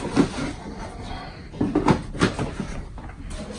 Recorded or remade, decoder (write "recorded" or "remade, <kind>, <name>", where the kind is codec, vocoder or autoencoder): recorded